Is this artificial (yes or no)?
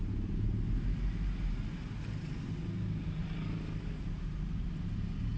no